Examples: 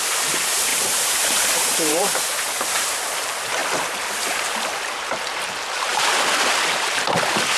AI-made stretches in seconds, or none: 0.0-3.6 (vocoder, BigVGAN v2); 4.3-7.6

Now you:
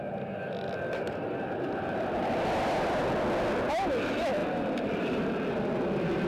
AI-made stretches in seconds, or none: 2.2-3.0 (vocoder, BigVGAN v2); 4.4-6.3

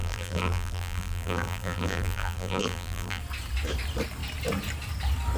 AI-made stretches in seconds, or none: 0.0-3.2 (vocoder, BigVGAN v2)

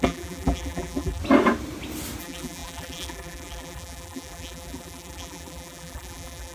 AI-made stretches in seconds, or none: 0.0-1.2 (vocoder, BigVGAN v2); 2.2-6.5

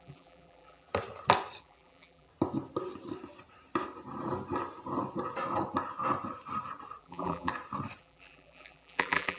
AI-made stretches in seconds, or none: 0.0-0.9 (vocoder, BigVGAN v2); 1.6-2.3; 7.0-7.5; 8.0-9.4